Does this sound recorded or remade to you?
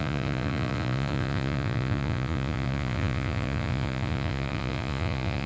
remade